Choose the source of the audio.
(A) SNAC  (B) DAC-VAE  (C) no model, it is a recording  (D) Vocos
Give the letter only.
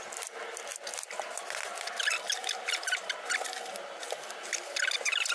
C